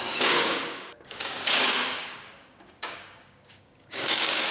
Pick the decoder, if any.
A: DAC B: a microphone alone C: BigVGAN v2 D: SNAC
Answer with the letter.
A